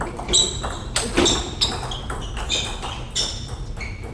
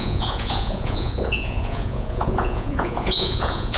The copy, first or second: second